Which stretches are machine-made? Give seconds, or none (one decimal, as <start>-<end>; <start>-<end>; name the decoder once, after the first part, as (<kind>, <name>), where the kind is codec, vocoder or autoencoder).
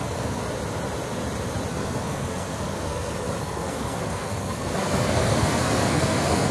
0.0-0.4 (codec, SNAC); 1.7-6.5